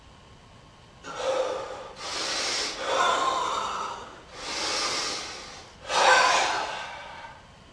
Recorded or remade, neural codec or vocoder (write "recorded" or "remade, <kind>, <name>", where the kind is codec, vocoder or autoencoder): recorded